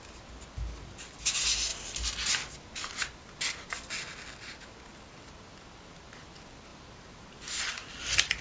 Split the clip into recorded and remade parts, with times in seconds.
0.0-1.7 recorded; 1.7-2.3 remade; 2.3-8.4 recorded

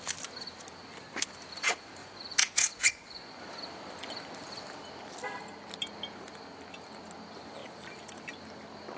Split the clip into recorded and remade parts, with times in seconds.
0.0-2.0 recorded; 2.0-3.4 remade; 3.4-9.0 recorded

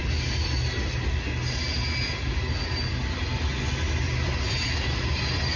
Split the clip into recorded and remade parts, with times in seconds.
0.0-5.6 recorded

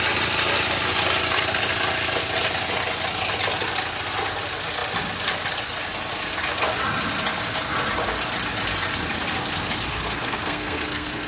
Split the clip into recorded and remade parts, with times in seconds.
0.0-9.9 recorded; 9.9-11.3 remade

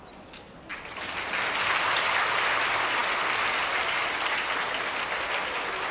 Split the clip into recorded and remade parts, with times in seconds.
0.0-5.9 recorded

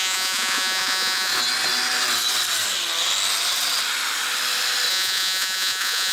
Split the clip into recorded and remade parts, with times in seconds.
0.0-1.3 remade; 1.3-4.9 recorded; 4.9-6.1 remade

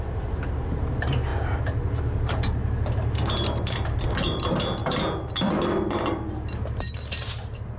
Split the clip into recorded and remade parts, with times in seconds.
0.0-7.8 recorded